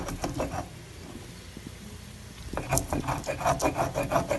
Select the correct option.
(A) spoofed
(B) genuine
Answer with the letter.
B